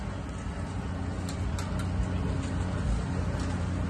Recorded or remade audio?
recorded